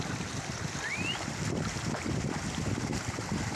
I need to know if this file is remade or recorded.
recorded